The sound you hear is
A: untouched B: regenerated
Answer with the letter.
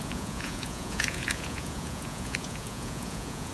B